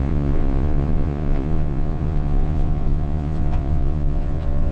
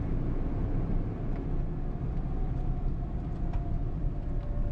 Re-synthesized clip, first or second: first